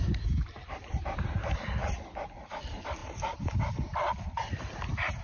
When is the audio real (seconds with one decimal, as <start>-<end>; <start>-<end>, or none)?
1.8-2.3